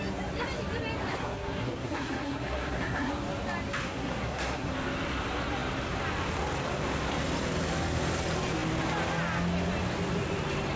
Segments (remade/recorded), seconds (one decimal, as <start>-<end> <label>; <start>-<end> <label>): 0.0-1.2 recorded; 1.2-3.1 remade; 3.1-3.8 recorded; 3.8-4.7 remade; 4.7-10.8 recorded